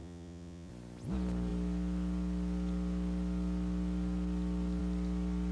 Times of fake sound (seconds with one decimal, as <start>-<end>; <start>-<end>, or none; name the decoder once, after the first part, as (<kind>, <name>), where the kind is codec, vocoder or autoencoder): 0.0-0.7 (vocoder, Vocos)